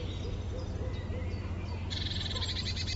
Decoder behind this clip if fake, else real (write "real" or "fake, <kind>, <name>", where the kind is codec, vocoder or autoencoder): real